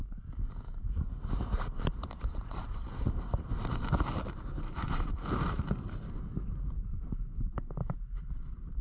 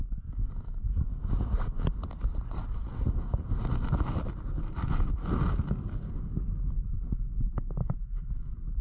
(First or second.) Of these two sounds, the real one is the second